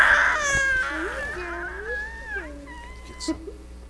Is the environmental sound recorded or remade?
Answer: recorded